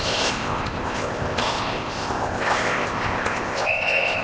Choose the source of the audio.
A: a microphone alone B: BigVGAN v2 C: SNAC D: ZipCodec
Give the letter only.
D